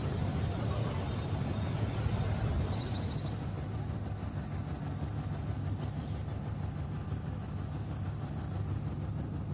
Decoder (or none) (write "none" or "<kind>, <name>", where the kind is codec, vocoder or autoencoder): none